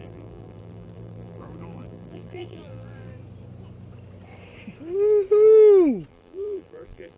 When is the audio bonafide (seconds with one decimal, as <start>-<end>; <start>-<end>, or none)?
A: 3.1-6.1